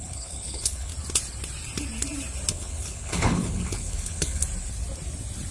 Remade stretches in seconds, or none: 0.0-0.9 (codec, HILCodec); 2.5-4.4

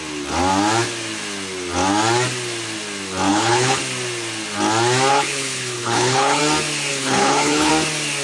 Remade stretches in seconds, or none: 3.3-3.8 (codec, HILCodec); 5.1-6.4; 6.9-7.7

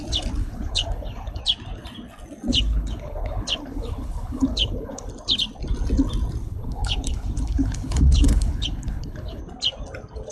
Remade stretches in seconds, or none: 0.4-1.4 (codec, HILCodec); 2.5-5.1; 6.4-9.4

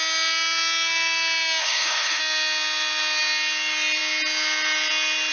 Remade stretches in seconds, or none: 1.6-2.2 (codec, HILCodec)

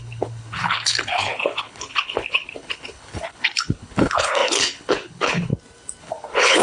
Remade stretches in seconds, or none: 0.0-5.5 (codec, HILCodec); 6.0-6.6

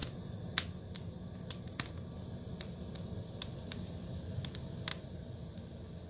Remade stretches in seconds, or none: none